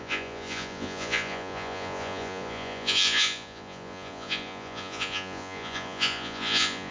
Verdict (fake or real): fake